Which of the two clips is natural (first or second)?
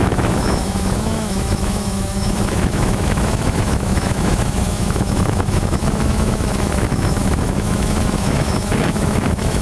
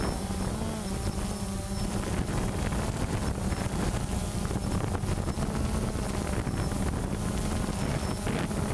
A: second